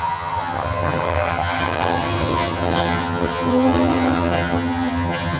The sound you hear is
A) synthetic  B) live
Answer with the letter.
A